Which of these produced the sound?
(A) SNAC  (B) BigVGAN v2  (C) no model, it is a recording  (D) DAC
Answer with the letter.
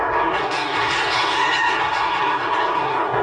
A